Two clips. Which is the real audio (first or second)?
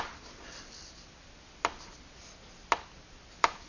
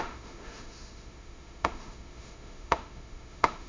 first